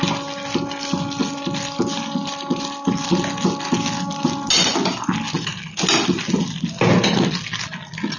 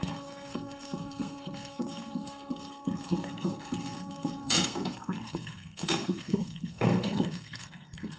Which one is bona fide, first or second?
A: first